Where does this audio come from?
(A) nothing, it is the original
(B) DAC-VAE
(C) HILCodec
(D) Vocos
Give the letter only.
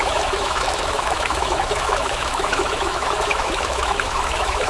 B